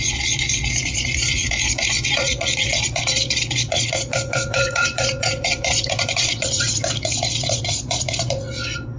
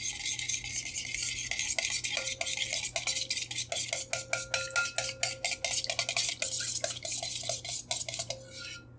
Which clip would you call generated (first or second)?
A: first